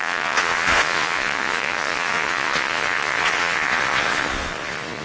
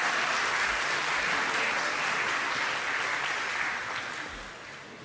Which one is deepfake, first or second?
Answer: first